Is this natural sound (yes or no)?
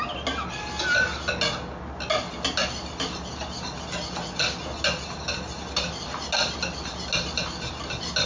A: yes